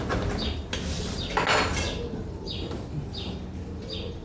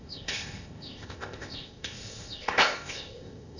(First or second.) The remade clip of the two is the second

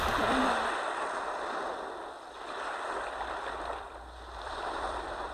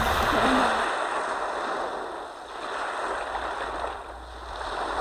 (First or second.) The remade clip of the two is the first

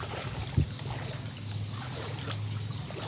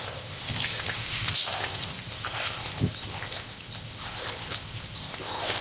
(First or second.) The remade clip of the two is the second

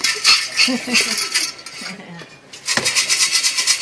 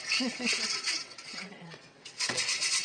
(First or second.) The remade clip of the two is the second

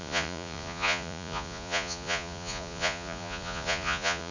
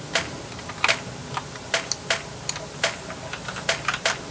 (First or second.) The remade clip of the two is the first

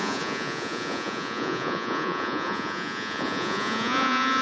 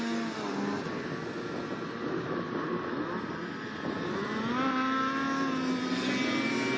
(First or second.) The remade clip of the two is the first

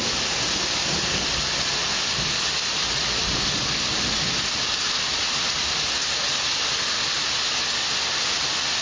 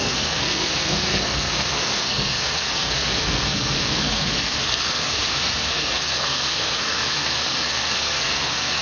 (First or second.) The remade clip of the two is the second